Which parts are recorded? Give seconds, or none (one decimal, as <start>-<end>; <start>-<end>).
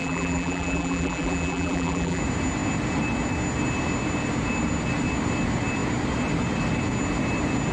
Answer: 2.2-7.7